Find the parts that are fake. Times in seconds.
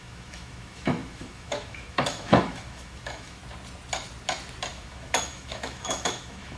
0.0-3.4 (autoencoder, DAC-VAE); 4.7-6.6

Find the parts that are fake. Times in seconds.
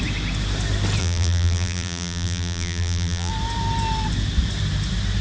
1.0-3.3 (vocoder, BigVGAN v2)